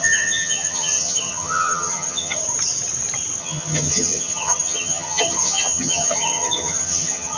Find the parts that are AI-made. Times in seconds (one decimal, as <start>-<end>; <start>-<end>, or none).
0.0-2.4; 3.4-7.4